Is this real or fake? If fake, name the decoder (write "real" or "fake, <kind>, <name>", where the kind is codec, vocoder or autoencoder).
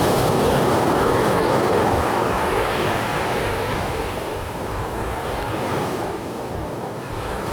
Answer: fake, codec, DAC